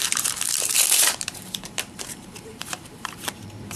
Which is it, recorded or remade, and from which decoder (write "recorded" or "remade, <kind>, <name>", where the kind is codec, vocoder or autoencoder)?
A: remade, vocoder, BigVGAN v2